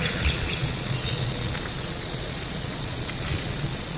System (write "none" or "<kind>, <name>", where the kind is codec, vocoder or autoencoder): vocoder, Vocos